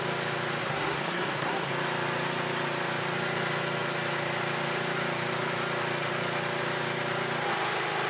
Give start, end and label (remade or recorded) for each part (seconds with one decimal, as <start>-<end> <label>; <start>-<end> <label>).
0.0-0.6 recorded; 0.6-1.7 remade; 1.7-8.1 recorded